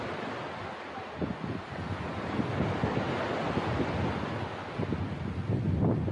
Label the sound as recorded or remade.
recorded